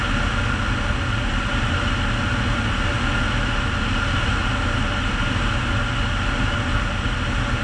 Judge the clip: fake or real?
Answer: real